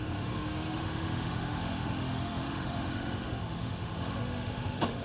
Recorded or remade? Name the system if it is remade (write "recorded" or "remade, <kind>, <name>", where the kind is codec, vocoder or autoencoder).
remade, autoencoder, DAC-VAE